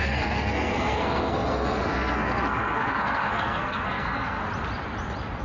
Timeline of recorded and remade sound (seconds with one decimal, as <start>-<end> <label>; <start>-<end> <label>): 0.0-4.4 remade; 4.4-5.4 recorded